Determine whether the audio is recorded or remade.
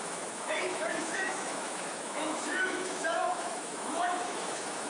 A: remade